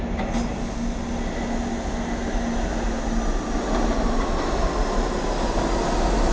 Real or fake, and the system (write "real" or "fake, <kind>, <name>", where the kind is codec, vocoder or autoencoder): real